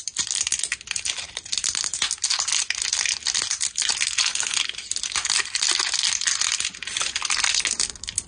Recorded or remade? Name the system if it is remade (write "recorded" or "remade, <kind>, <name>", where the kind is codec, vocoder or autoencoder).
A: recorded